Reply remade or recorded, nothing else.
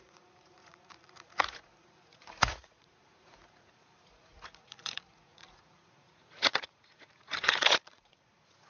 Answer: remade